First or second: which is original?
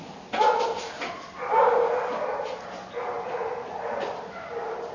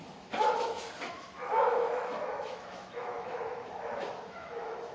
first